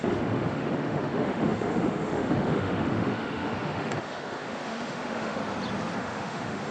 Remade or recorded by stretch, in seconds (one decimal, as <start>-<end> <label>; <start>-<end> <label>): 0.0-5.4 remade; 5.4-6.0 recorded; 6.0-6.7 remade